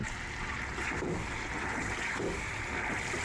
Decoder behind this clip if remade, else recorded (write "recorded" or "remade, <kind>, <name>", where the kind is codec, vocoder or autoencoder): recorded